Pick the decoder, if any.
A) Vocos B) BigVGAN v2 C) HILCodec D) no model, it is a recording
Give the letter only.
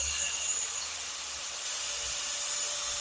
D